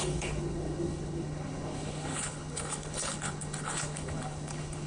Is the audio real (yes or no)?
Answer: no